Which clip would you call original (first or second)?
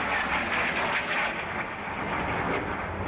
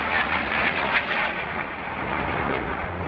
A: first